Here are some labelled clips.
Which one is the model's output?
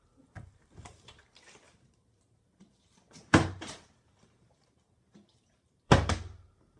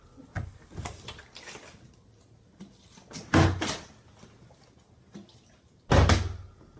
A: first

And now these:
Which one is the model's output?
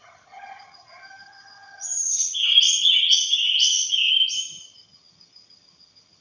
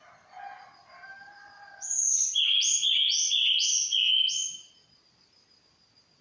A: first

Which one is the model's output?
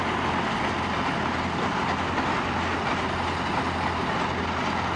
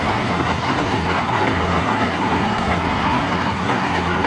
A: second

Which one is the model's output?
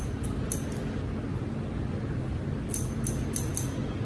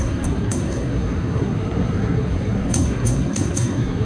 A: second